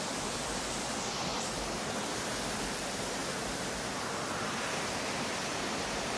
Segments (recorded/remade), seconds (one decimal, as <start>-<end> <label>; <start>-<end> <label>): 0.0-1.3 recorded; 1.3-2.6 remade; 2.6-5.4 recorded; 5.4-6.2 remade

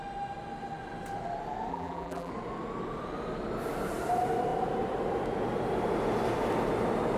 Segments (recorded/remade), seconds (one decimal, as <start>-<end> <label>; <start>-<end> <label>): 0.0-1.7 recorded; 1.7-2.3 remade; 2.3-7.2 recorded

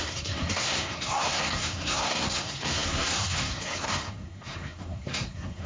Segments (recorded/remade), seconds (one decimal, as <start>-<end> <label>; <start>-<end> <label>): 0.0-5.7 remade